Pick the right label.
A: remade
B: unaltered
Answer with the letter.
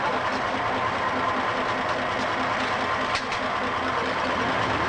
B